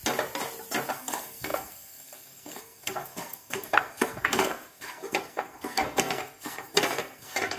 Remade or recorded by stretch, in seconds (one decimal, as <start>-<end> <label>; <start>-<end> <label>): 0.0-0.9 recorded; 0.9-7.6 remade